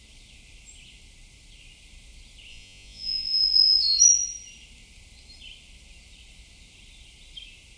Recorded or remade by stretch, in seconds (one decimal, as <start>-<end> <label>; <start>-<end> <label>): 0.0-2.5 recorded; 2.5-4.0 remade; 4.0-7.8 recorded